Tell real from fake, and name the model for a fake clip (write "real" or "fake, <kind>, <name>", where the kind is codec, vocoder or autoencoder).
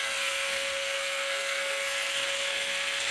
fake, codec, SNAC